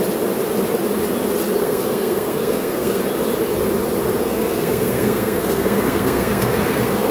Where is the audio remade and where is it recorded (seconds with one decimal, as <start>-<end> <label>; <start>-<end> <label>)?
0.0-1.6 recorded; 1.6-3.0 remade; 3.0-4.2 recorded; 4.2-7.1 remade